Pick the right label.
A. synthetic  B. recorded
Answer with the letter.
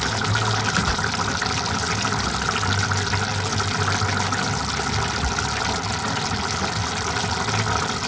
B